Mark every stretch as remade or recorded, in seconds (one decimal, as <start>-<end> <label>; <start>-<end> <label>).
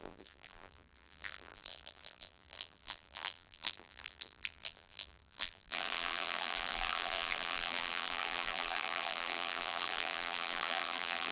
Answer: 0.0-11.3 remade